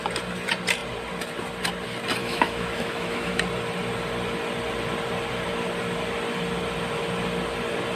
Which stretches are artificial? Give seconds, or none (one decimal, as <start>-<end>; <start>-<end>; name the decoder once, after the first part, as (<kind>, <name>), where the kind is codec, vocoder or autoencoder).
2.2-3.4 (autoencoder, DAC-VAE)